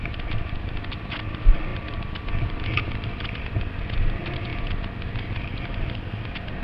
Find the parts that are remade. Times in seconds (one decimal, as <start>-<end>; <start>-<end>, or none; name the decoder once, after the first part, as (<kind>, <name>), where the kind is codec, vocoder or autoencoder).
0.0-4.5 (vocoder, BigVGAN v2); 5.3-6.6